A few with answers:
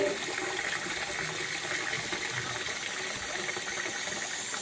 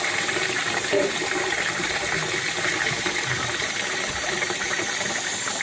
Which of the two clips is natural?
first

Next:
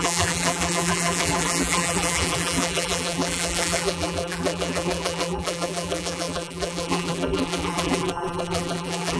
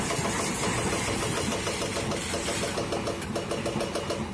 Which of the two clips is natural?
second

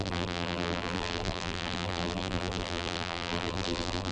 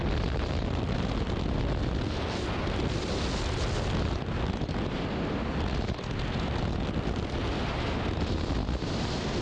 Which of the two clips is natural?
second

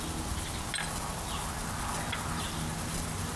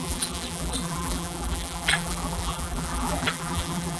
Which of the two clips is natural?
first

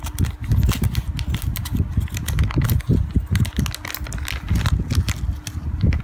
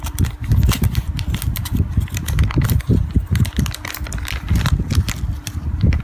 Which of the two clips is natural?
first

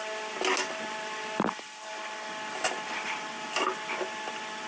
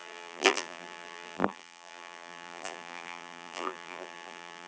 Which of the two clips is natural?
first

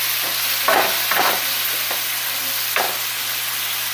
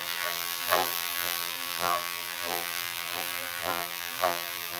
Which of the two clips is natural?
first